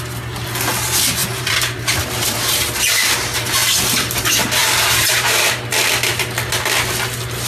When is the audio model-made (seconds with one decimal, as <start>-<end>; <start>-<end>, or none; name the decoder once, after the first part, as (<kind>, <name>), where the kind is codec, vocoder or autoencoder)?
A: 1.2-2.0 (vocoder, BigVGAN v2); 3.6-5.5